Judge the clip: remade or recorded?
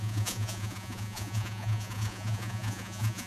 remade